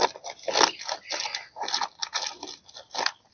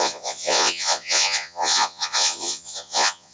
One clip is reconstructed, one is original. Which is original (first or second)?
first